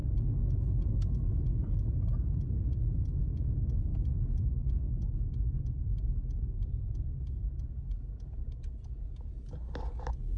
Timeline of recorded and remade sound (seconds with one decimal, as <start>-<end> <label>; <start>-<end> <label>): 0.0-10.4 recorded